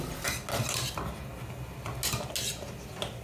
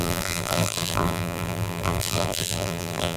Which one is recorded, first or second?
first